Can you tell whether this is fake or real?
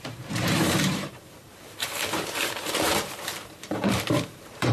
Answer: fake